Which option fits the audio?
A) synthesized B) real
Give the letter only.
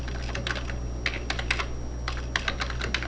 B